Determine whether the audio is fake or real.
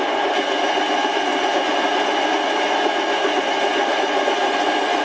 fake